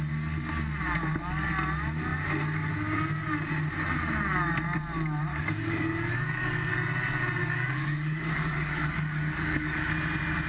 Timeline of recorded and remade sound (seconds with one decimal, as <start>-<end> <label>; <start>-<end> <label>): 0.0-5.3 recorded; 5.3-6.7 remade; 6.7-7.4 recorded; 7.4-9.9 remade; 9.9-10.5 recorded